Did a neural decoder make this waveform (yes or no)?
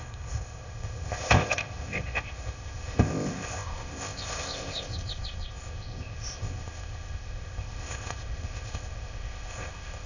yes